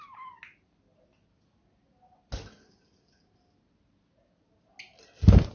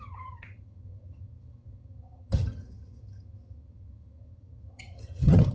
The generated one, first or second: second